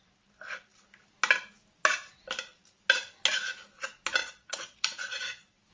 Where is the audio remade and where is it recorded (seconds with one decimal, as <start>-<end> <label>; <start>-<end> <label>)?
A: 0.0-4.2 recorded; 4.2-5.7 remade